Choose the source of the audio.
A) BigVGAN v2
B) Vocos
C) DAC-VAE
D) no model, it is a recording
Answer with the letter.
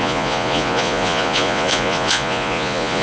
B